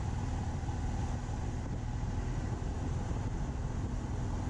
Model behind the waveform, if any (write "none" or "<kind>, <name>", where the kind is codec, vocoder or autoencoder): none